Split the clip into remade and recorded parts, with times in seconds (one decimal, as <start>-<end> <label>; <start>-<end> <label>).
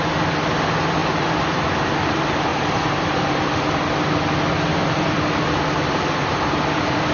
0.0-1.0 recorded; 1.0-1.6 remade; 1.6-2.5 recorded; 2.5-4.1 remade; 4.1-4.7 recorded; 4.7-7.1 remade